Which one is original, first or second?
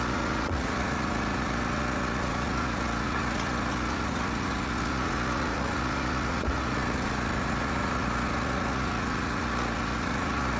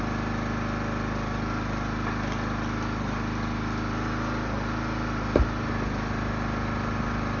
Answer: second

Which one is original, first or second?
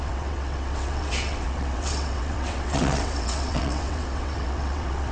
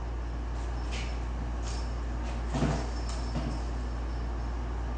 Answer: second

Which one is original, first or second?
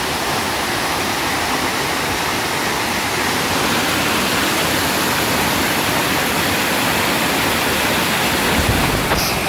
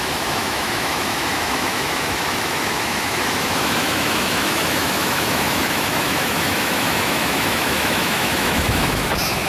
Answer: first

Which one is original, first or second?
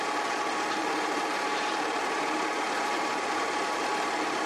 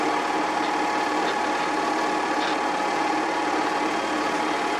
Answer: second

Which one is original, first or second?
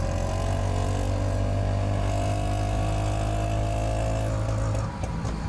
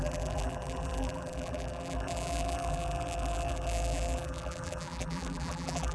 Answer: first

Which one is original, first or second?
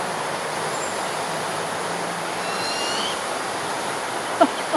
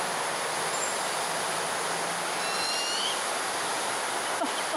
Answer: second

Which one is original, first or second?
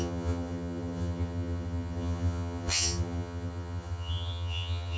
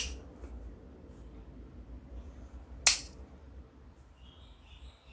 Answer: second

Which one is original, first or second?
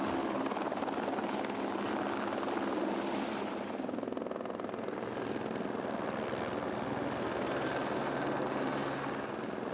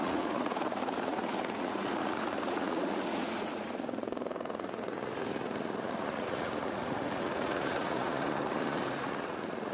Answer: first